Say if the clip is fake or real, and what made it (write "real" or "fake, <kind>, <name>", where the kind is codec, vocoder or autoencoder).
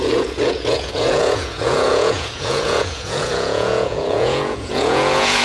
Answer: fake, vocoder, Vocos